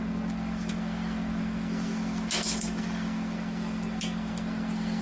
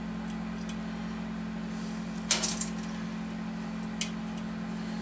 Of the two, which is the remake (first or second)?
first